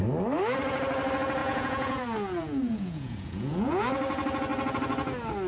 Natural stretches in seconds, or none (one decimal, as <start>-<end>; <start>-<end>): 0.0-1.4; 3.9-5.5